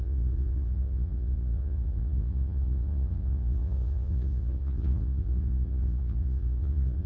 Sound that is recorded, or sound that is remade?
remade